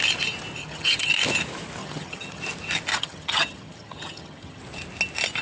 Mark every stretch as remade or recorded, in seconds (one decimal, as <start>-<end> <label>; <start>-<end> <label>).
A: 0.0-0.6 recorded; 0.6-1.1 remade; 1.1-1.8 recorded; 1.8-2.4 remade; 2.4-2.9 recorded; 2.9-4.6 remade; 4.6-5.4 recorded